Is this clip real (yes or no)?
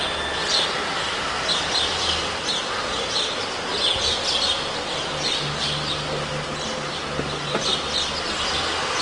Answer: yes